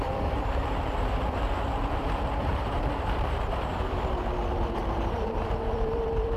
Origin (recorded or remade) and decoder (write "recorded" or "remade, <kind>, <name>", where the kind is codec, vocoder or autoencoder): remade, vocoder, BigVGAN v2